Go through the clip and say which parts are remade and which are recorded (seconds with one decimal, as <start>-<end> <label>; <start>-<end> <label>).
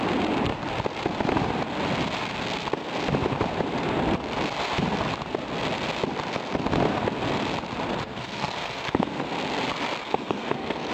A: 0.0-8.0 recorded; 8.0-9.2 remade; 9.2-10.0 recorded; 10.0-10.9 remade